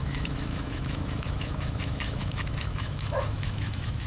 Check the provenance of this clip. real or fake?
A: fake